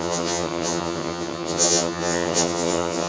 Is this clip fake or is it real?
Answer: fake